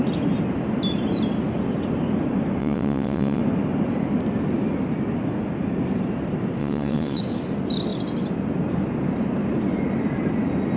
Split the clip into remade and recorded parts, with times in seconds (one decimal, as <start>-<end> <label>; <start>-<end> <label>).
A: 0.0-2.6 recorded; 2.6-3.4 remade; 3.4-6.6 recorded; 6.6-7.2 remade; 7.2-10.8 recorded